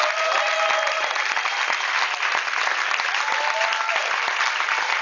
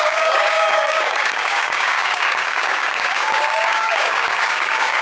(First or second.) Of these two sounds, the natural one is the first